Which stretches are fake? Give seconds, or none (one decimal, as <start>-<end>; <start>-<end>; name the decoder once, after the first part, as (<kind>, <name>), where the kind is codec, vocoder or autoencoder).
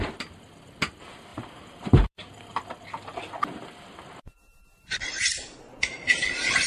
1.3-2.7 (vocoder, BigVGAN v2)